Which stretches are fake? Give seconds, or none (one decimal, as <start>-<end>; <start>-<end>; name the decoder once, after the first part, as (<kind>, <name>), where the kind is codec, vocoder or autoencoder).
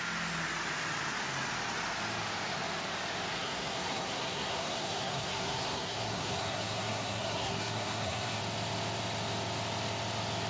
3.3-8.4 (codec, SNAC)